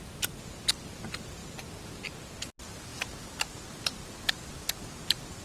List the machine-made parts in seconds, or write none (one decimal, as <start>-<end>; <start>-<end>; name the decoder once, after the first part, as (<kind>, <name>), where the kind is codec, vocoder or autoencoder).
none